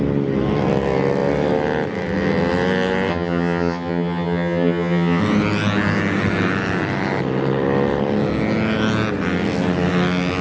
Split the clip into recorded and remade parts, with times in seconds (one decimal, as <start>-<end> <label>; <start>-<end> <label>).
0.0-3.1 recorded; 3.1-5.2 remade; 5.2-10.4 recorded